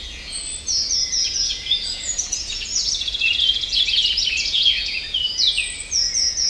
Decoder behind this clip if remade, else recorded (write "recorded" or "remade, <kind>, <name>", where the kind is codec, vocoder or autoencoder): remade, vocoder, Vocos